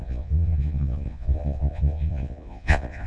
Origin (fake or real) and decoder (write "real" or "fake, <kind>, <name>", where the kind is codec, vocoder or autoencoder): fake, vocoder, Vocos